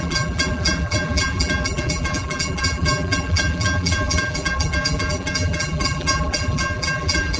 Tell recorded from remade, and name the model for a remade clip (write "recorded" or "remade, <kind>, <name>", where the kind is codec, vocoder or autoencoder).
remade, vocoder, BigVGAN v2